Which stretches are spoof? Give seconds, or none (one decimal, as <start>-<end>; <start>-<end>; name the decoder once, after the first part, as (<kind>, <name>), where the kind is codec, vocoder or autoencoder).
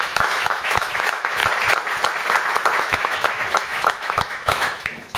0.0-1.4 (autoencoder, DAC-VAE); 2.8-5.2